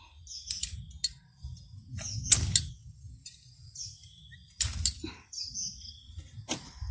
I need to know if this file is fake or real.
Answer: real